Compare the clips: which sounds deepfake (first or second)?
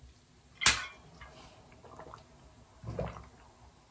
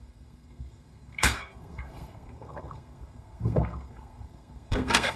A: second